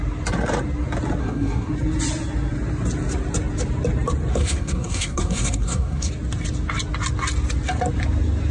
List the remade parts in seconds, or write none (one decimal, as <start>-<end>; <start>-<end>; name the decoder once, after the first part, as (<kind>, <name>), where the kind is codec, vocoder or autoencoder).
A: 1.2-1.7 (codec, SNAC); 4.3-6.1